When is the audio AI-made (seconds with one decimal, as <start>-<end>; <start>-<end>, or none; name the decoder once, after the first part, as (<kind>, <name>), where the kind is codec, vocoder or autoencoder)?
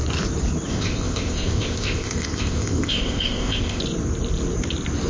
0.7-3.8 (codec, ZipCodec)